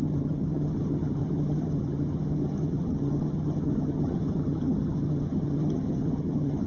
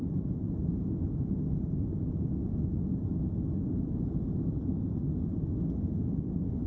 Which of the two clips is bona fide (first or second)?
second